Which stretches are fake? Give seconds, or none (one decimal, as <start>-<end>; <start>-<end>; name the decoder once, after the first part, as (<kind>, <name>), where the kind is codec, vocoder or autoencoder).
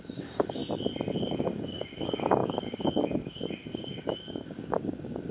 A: 0.0-0.6 (codec, DAC); 1.2-5.3